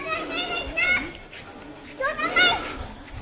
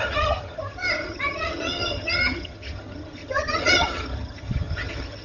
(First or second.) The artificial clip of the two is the second